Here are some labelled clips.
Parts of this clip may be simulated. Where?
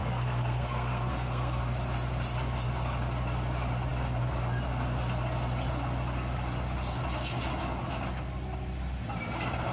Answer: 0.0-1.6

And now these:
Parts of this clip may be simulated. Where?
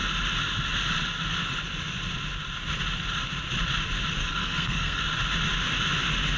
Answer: 4.2-5.0